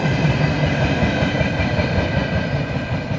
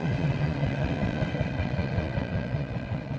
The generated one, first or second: second